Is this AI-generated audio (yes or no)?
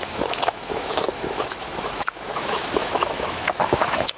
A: yes